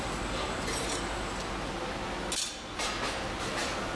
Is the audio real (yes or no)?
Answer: yes